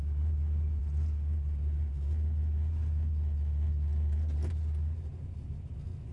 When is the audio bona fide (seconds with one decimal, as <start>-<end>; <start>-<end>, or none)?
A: 0.0-6.1

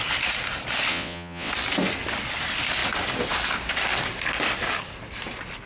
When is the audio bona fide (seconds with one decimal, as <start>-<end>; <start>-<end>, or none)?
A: 0.0-0.9; 1.5-5.7

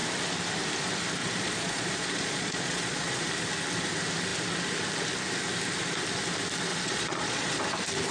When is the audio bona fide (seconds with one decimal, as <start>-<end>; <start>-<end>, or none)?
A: 0.0-1.2; 3.2-6.7; 7.6-8.1